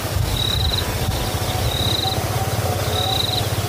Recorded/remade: recorded